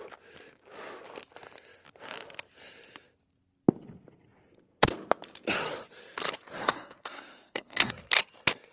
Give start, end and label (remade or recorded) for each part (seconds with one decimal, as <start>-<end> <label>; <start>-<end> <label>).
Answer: 0.0-6.6 recorded; 6.6-7.9 remade; 7.9-8.7 recorded